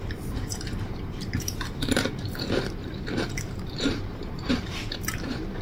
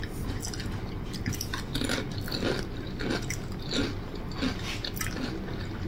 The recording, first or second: second